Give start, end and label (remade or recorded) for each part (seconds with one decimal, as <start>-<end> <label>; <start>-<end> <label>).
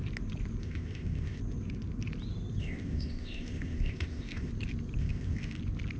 0.0-0.6 recorded; 0.6-1.4 remade; 1.4-2.6 recorded; 2.6-4.5 remade; 4.5-5.0 recorded; 5.0-5.6 remade; 5.6-6.0 recorded